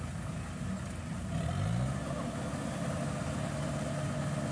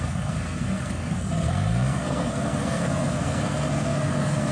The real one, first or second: first